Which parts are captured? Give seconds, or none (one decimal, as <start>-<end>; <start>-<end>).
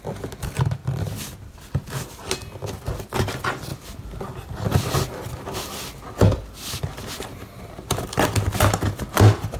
0.0-9.6